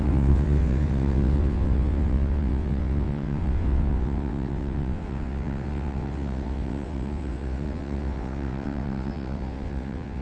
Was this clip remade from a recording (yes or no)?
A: yes